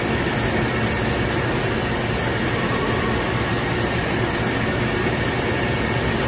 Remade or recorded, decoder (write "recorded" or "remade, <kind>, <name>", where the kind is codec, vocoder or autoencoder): recorded